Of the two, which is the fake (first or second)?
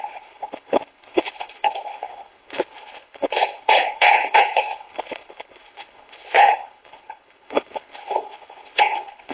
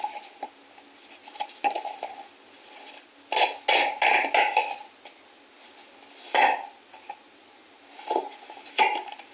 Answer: first